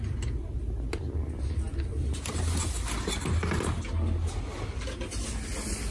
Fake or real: real